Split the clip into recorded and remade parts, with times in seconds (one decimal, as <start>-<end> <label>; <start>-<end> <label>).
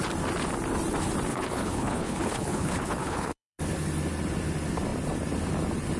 0.0-1.3 recorded; 1.3-3.6 remade; 3.6-6.0 recorded